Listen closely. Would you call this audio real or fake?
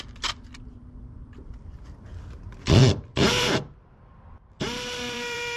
fake